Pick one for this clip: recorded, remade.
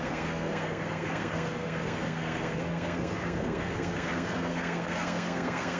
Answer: remade